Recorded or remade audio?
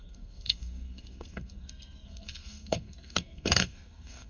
remade